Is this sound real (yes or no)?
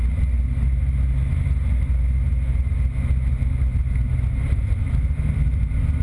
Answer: yes